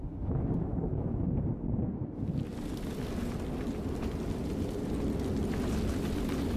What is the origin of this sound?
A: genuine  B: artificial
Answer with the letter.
A